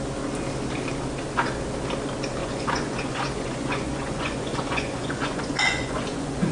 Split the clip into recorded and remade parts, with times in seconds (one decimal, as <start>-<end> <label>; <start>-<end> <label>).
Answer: 0.0-2.4 recorded; 2.4-6.5 remade